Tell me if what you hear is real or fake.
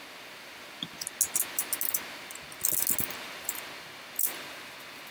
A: real